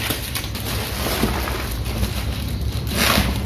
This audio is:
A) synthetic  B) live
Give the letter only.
B